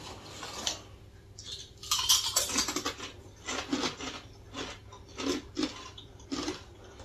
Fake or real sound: real